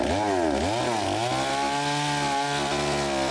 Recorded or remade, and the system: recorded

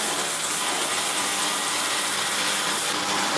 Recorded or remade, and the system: remade, vocoder, BigVGAN v2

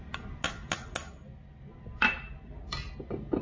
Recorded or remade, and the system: recorded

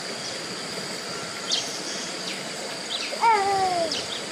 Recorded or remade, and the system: recorded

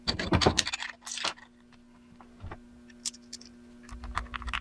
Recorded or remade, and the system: recorded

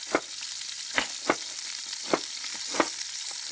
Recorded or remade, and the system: recorded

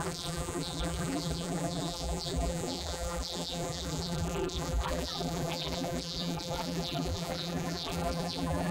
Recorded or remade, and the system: remade, vocoder, BigVGAN v2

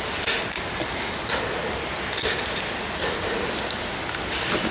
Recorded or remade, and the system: recorded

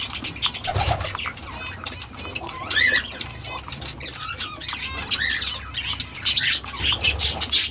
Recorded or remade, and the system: recorded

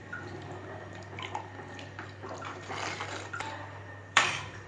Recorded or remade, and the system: remade, vocoder, BigVGAN v2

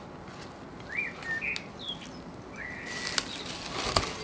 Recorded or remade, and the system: recorded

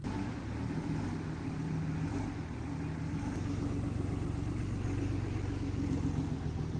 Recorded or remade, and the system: recorded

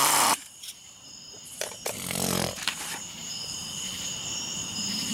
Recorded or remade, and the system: remade, vocoder, BigVGAN v2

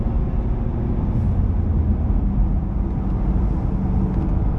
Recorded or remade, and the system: recorded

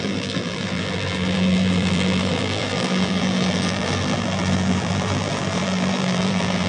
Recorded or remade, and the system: remade, vocoder, BigVGAN v2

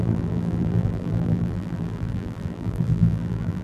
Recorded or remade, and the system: remade, vocoder, BigVGAN v2